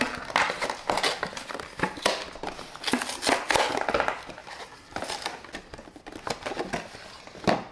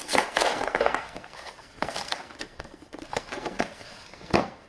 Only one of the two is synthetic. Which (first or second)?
second